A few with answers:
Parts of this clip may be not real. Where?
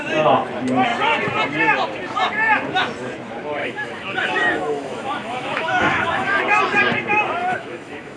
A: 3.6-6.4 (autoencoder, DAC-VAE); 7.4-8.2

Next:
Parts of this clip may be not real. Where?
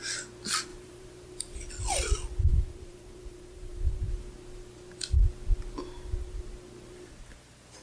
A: 0.7-1.7 (vocoder, BigVGAN v2); 2.5-4.1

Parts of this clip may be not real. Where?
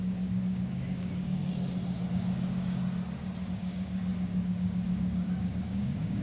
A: 0.0-1.4 (codec, DAC); 2.1-2.8; 3.5-6.2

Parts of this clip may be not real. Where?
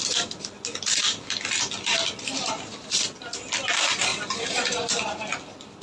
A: 4.1-4.8 (vocoder, BigVGAN v2)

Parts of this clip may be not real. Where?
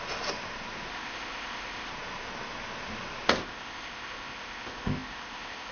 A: 0.9-1.9 (codec, ZipCodec); 3.4-5.7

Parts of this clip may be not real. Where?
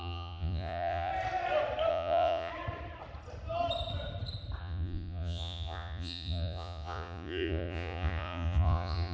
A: 0.0-1.1 (vocoder, Vocos); 1.9-2.5; 4.6-9.1